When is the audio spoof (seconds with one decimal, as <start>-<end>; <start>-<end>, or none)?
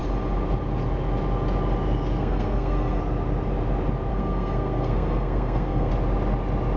2.2-3.0; 4.1-5.9